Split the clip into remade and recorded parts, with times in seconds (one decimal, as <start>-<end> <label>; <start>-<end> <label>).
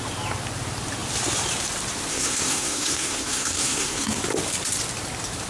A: 0.0-2.1 recorded; 2.1-4.2 remade; 4.2-5.5 recorded